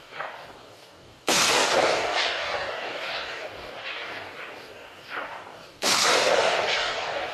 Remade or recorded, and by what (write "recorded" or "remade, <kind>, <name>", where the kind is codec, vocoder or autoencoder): remade, codec, DAC